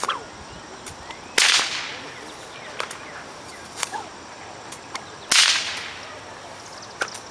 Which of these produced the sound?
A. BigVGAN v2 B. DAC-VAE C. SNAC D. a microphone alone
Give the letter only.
D